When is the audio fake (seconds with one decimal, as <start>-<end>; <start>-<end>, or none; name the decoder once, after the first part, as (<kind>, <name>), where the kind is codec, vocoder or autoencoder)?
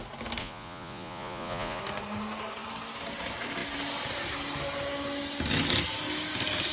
0.4-1.8 (vocoder, Vocos)